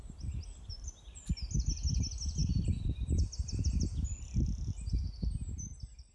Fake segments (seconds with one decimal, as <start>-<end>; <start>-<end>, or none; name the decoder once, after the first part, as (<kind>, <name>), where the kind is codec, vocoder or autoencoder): 0.5-1.4 (vocoder, BigVGAN v2); 2.4-3.2